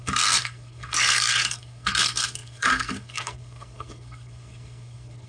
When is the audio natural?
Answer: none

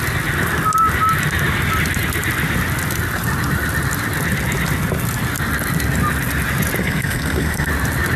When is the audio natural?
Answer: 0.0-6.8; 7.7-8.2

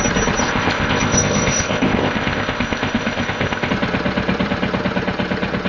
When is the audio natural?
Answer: 0.0-0.4; 3.7-5.7

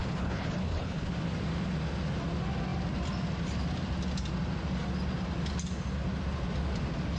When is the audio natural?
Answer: 1.1-7.2

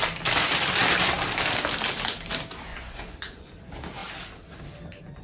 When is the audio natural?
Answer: 0.0-2.7; 3.5-5.2

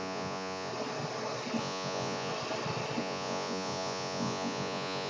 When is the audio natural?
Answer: 0.7-1.6; 2.3-3.0

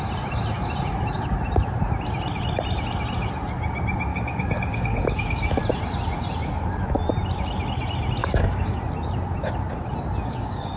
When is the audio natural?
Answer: 0.0-4.1; 5.6-8.2; 8.8-10.2